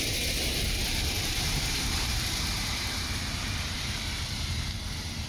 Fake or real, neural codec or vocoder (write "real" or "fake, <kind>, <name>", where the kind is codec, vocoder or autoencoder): fake, vocoder, BigVGAN v2